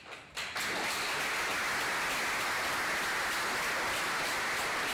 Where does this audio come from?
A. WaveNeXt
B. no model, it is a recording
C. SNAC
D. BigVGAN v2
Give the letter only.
B